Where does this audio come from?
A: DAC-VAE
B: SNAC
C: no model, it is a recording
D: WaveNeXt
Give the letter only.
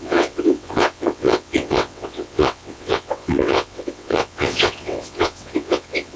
D